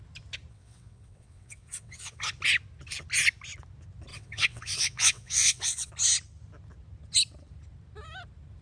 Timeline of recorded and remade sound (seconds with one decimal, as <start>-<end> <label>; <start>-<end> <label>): 0.0-0.5 recorded; 0.5-2.2 remade; 2.2-4.1 recorded; 4.1-5.9 remade; 5.9-8.6 recorded